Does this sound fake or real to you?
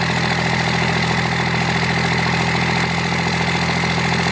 real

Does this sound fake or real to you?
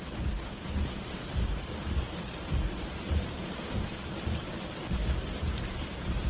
fake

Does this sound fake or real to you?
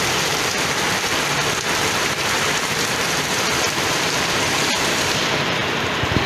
fake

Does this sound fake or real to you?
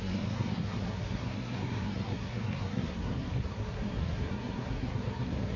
fake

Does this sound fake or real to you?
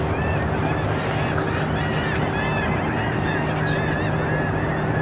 real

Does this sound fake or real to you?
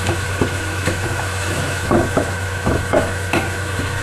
fake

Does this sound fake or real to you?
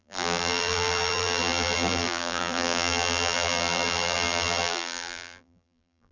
fake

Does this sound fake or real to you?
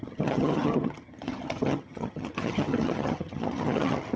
fake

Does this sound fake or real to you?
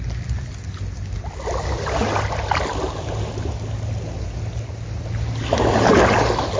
real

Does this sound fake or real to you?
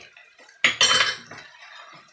real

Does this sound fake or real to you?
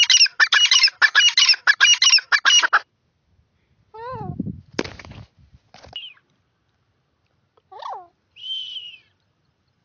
real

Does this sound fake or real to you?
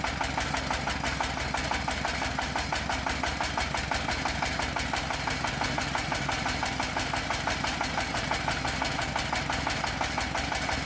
real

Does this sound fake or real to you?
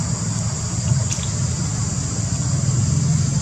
real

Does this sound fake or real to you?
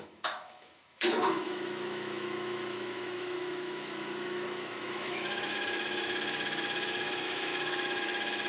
fake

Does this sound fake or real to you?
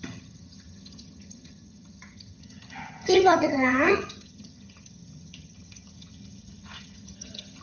fake